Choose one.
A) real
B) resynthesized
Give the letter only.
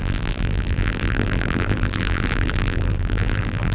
B